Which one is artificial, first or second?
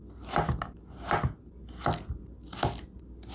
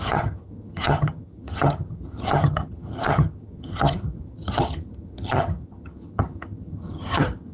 second